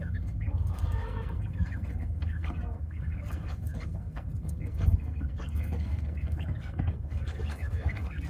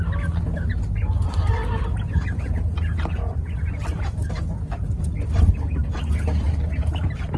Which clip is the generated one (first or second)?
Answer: first